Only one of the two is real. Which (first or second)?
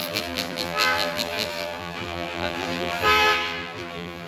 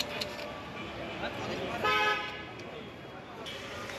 second